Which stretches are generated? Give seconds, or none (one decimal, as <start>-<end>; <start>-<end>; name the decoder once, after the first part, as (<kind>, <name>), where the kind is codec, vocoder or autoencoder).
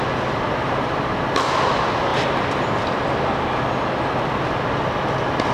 none